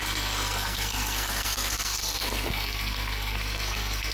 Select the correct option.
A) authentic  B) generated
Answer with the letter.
B